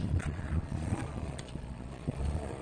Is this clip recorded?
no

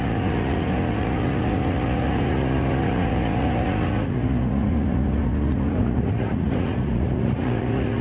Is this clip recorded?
no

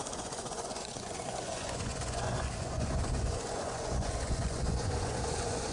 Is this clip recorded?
no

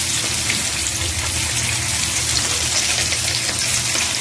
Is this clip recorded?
yes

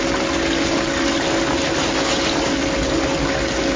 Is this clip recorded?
yes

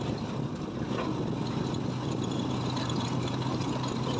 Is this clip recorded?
yes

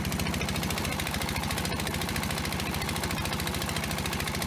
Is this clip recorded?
yes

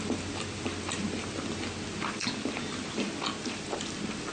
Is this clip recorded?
yes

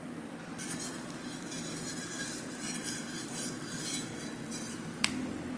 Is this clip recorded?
yes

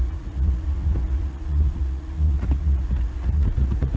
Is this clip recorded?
no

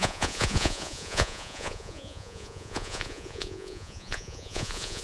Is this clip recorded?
no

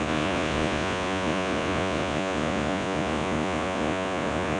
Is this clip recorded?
no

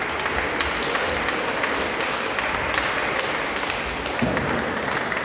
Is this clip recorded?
yes